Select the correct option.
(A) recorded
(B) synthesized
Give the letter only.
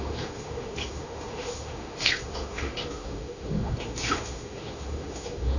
B